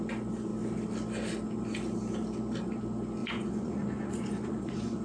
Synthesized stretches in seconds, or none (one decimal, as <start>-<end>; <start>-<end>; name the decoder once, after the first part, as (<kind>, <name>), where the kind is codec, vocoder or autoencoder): 3.2-5.0 (vocoder, Vocos)